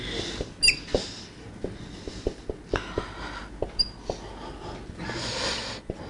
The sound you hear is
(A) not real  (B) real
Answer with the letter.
B